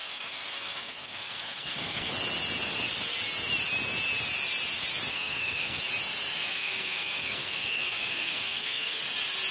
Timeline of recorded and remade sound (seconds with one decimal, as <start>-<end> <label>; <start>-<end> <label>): 0.0-2.1 remade; 2.1-5.1 recorded; 5.1-5.8 remade; 5.8-6.3 recorded; 6.3-9.0 remade; 9.0-9.5 recorded